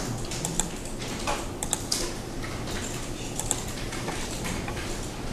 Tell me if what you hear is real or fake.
fake